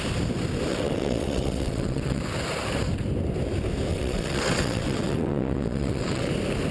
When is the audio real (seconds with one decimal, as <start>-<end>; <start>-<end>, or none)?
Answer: 0.0-0.7; 2.2-3.9; 6.3-6.7